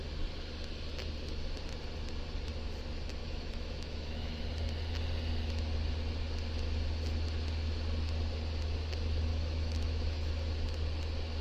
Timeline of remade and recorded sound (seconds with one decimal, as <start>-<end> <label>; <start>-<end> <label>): 0.0-3.2 recorded; 3.2-4.4 remade; 4.4-9.3 recorded; 9.3-10.3 remade; 10.3-11.4 recorded